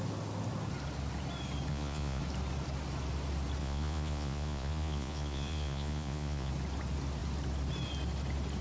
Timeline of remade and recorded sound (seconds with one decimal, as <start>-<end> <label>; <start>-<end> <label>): 0.0-1.7 recorded; 1.7-2.2 remade; 2.2-3.6 recorded; 3.6-6.5 remade; 6.5-8.6 recorded